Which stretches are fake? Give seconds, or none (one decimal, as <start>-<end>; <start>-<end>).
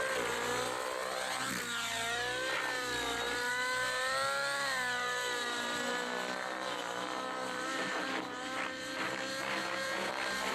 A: 9.6-10.1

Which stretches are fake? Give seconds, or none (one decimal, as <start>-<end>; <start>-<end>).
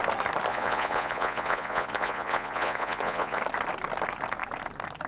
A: 0.5-3.4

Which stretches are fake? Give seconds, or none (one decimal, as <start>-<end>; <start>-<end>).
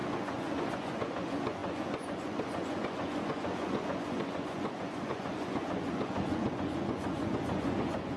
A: 0.0-8.2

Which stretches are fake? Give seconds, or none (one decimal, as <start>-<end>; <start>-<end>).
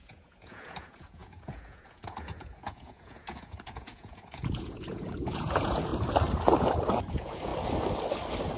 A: 0.0-5.9; 7.1-7.5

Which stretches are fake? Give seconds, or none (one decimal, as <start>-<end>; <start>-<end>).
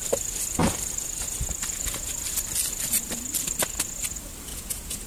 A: 4.5-5.1